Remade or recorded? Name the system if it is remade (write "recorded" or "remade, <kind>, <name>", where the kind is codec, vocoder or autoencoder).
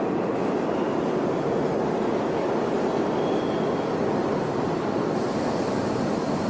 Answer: recorded